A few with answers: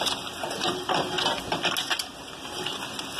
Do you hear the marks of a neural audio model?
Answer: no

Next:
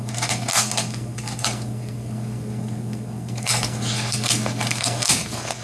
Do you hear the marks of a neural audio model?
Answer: yes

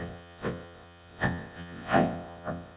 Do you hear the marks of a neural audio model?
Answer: yes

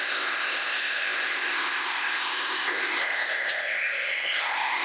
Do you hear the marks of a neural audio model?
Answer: yes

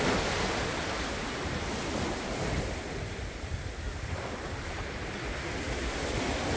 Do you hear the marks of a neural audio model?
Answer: no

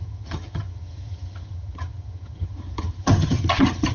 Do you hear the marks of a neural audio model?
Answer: yes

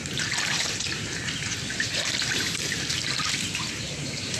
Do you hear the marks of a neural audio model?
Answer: yes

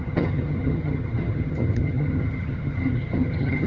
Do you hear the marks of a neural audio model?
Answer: yes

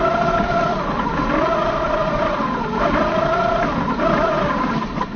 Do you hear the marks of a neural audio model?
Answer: no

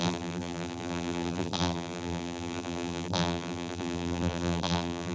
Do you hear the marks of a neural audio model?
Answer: yes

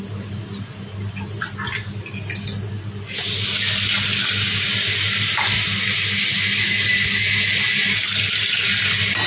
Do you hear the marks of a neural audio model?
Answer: no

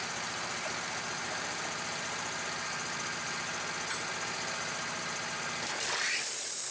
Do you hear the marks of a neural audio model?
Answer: no